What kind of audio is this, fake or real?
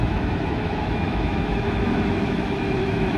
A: fake